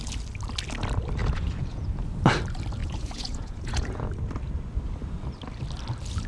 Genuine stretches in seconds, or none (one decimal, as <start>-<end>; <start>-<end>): 0.0-1.2; 1.9-2.8; 4.1-6.3